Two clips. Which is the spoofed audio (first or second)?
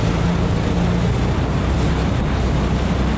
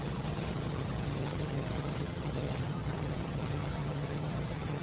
second